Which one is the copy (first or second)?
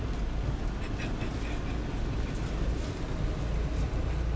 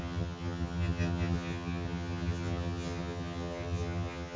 second